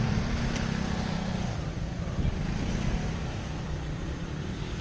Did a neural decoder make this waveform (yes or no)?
yes